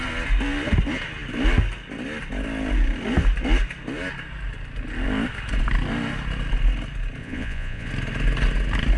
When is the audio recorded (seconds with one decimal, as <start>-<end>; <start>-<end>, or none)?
0.0-7.2; 7.9-9.0